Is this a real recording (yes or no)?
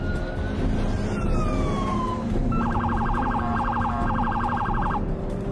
no